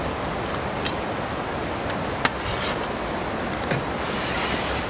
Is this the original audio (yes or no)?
yes